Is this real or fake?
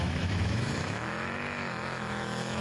fake